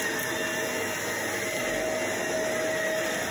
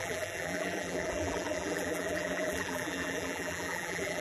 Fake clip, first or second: second